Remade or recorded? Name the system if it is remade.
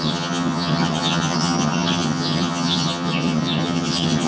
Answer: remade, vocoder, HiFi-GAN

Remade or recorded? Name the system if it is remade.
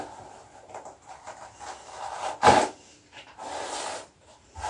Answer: recorded